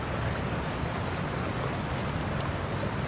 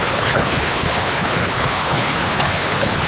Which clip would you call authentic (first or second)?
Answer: first